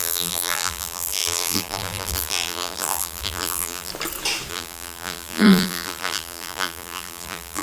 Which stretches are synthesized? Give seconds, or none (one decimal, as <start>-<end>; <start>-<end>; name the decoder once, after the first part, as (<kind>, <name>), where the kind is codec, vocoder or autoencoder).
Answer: 0.0-3.9 (vocoder, BigVGAN v2); 4.5-7.6